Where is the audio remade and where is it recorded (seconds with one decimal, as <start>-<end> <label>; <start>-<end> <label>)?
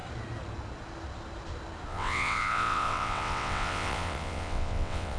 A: 0.0-1.9 recorded; 1.9-5.2 remade